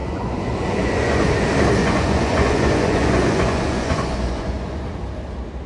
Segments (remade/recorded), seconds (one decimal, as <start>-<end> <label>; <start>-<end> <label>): 0.0-1.3 remade; 1.3-1.8 recorded; 1.8-4.8 remade; 4.8-5.7 recorded